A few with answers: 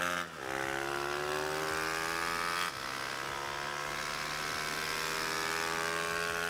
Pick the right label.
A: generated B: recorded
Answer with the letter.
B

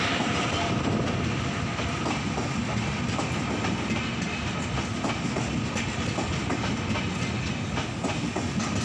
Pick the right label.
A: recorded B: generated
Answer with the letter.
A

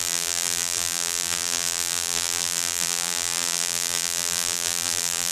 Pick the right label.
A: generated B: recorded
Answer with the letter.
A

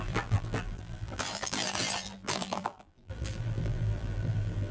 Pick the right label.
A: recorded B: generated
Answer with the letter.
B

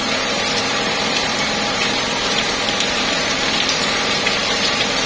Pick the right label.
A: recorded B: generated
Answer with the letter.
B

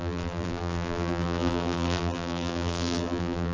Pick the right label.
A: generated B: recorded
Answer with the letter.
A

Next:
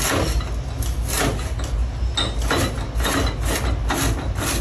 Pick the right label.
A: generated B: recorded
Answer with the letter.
B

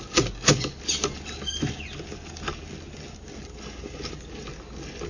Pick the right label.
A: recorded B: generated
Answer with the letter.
A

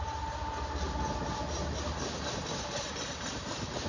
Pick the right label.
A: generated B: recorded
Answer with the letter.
B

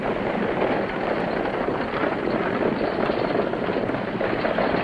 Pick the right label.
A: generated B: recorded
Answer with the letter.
B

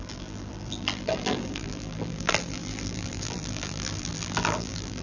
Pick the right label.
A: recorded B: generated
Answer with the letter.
B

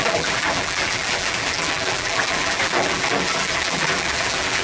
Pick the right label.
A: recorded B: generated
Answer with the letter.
B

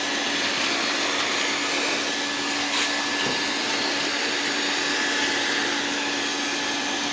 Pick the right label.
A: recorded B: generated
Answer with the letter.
A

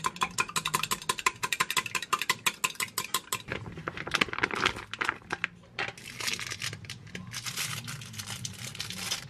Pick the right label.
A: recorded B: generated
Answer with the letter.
A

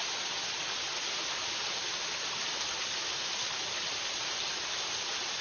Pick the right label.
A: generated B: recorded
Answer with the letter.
A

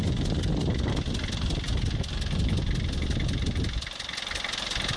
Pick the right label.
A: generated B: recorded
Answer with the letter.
B